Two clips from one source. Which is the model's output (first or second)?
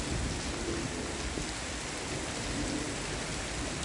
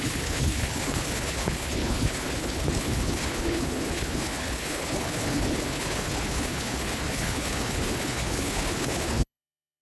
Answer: second